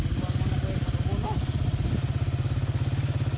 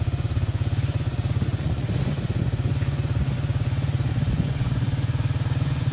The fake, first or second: second